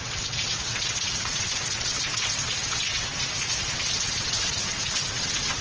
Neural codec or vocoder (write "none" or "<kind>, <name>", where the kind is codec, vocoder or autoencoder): vocoder, WaveNeXt